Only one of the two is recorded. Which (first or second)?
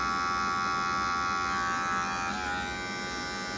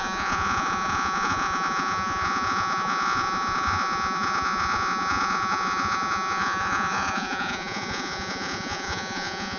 first